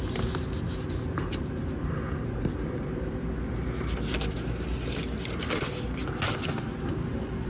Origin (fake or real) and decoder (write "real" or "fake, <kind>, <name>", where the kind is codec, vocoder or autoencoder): real